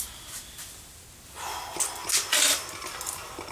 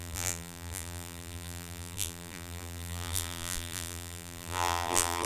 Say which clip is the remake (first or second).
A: second